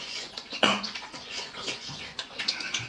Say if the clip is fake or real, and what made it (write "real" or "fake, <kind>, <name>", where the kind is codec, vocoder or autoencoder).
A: fake, vocoder, Vocos